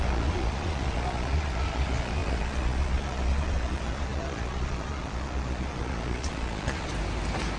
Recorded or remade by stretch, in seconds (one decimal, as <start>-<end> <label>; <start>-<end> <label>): 0.0-6.9 remade; 6.9-7.6 recorded